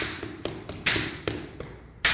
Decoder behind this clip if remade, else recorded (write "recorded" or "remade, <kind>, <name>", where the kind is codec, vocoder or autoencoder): recorded